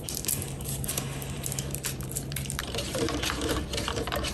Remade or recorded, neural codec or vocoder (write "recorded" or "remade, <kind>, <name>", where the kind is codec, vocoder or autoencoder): remade, vocoder, BigVGAN v2